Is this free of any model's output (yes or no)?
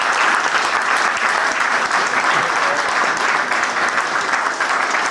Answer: yes